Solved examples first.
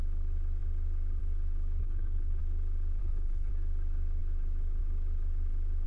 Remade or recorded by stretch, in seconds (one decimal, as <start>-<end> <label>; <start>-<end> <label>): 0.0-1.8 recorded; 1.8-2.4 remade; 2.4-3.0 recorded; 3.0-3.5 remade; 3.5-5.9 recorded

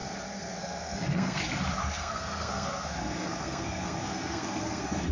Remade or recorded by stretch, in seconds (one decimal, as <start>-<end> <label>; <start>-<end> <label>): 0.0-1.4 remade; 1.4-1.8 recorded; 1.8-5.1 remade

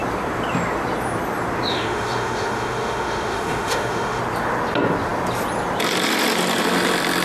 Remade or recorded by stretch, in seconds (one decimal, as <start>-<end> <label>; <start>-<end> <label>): 0.0-1.7 recorded; 1.7-4.2 remade; 4.2-7.2 recorded

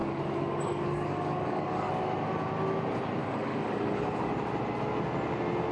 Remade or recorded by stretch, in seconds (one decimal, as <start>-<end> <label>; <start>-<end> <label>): 0.0-1.9 remade; 1.9-3.2 recorded; 3.2-4.3 remade; 4.3-5.7 recorded

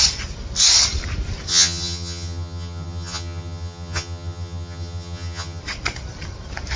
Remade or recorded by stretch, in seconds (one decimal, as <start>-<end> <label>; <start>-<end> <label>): 0.0-1.5 recorded; 1.5-5.6 remade; 5.6-6.8 recorded